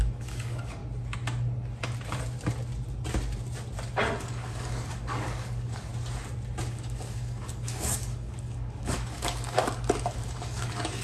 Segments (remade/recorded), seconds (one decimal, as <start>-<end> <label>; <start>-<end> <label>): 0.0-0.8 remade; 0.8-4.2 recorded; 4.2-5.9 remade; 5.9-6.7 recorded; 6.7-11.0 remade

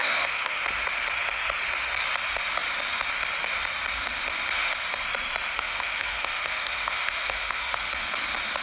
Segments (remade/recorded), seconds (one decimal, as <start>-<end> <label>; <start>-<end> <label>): 0.0-0.6 remade; 0.6-5.5 recorded; 5.5-7.9 remade; 7.9-8.6 recorded

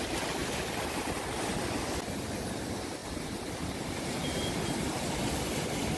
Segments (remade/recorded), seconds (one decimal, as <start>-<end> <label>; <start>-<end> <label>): 0.0-0.4 recorded; 0.4-1.3 remade; 1.3-3.0 recorded; 3.0-5.1 remade; 5.1-6.0 recorded

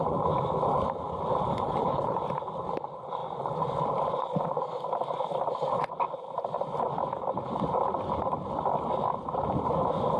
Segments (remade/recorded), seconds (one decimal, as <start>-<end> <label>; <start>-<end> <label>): 0.0-1.5 recorded; 1.5-2.2 remade; 2.2-10.2 recorded